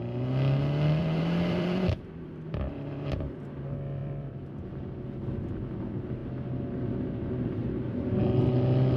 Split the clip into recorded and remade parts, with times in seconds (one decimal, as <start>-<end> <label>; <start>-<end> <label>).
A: 0.0-1.0 recorded; 1.0-3.4 remade; 3.4-4.0 recorded; 4.0-4.7 remade; 4.7-9.0 recorded